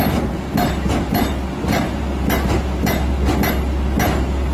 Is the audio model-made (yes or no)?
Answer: no